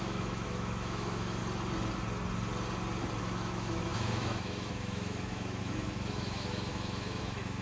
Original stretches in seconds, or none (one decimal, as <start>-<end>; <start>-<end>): 1.4-3.2